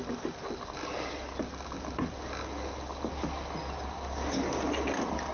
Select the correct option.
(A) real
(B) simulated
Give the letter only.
A